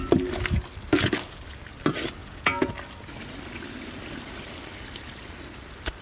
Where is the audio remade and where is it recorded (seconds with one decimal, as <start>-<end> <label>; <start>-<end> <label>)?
0.0-2.2 recorded; 2.2-2.7 remade; 2.7-6.0 recorded